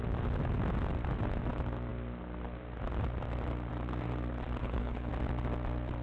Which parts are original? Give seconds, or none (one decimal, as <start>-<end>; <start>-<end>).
0.0-4.6; 5.1-6.0